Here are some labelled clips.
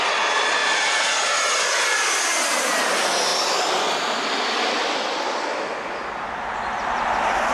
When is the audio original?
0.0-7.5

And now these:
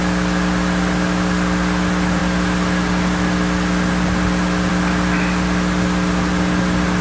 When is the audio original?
0.0-7.0

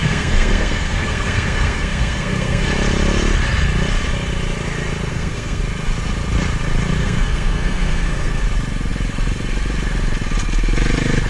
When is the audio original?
2.7-5.1; 5.6-7.0; 8.4-11.3